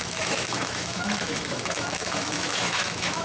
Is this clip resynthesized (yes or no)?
yes